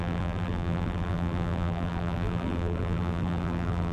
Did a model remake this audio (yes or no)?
yes